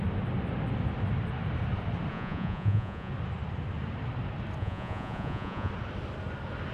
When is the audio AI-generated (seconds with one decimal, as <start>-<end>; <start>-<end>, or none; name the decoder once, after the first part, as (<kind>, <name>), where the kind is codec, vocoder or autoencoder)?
2.1-3.1 (vocoder, Vocos); 4.6-5.7